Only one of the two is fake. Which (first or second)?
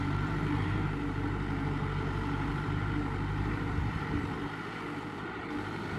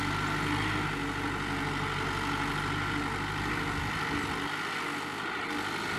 first